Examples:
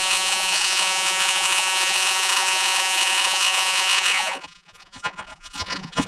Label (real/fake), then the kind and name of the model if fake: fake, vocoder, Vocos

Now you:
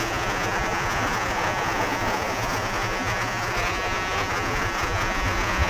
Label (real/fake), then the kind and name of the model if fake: fake, vocoder, Vocos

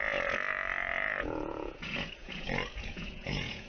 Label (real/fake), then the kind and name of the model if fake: fake, vocoder, Vocos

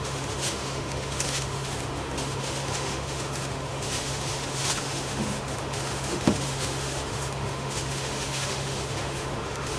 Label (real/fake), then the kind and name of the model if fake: fake, autoencoder, DAC-VAE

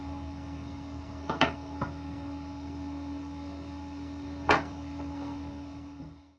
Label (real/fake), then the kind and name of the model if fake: fake, codec, SNAC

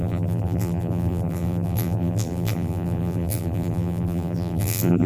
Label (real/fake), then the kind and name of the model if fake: fake, vocoder, BigVGAN v2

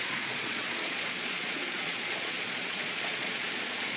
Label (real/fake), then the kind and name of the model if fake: fake, vocoder, Vocos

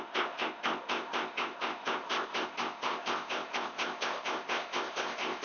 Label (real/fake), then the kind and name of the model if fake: fake, codec, ZipCodec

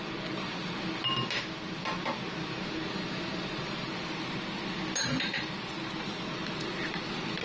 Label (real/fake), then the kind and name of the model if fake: real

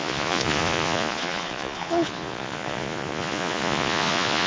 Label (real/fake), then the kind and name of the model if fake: fake, vocoder, Vocos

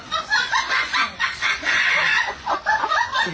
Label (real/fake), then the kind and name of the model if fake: fake, vocoder, Vocos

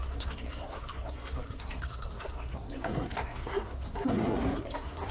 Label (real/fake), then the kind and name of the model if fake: fake, codec, SNAC